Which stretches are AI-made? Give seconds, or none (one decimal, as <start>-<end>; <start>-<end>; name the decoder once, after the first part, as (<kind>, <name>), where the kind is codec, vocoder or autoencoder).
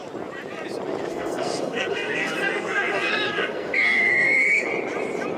1.1-4.7 (codec, SNAC)